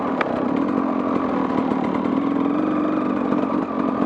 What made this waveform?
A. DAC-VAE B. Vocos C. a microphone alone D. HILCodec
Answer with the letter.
C